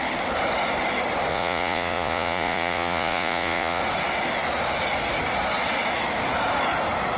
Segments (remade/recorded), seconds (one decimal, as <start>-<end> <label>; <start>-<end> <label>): 0.0-1.3 recorded; 1.3-3.8 remade; 3.8-7.2 recorded